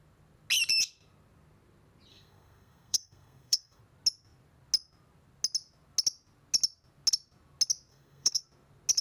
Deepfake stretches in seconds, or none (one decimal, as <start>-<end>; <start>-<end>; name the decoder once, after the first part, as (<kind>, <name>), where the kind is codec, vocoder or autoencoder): 2.1-3.8 (codec, SNAC); 7.9-8.4